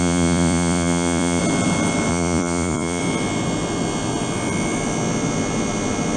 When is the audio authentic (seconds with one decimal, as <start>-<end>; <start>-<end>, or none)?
1.4-2.1; 3.0-6.2